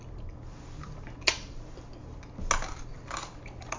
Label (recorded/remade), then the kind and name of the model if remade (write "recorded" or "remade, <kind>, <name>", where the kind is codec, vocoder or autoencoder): recorded